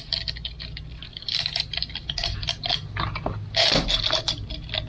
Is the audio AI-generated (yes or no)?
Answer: no